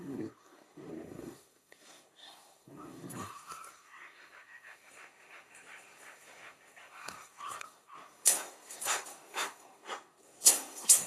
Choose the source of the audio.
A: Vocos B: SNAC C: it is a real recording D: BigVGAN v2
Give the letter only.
B